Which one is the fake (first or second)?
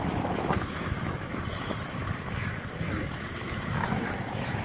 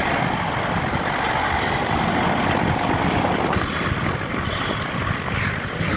first